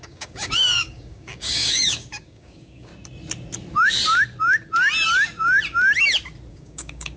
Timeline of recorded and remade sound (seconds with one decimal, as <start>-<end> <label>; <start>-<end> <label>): 0.0-2.9 remade; 2.9-6.5 recorded; 6.5-7.2 remade